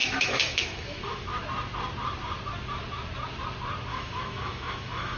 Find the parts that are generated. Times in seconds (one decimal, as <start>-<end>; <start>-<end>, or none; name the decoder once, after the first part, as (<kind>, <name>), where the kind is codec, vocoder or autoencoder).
0.0-1.4 (autoencoder, DAC-VAE); 3.9-5.2